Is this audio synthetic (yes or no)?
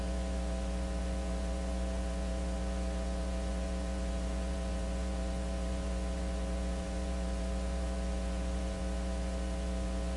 yes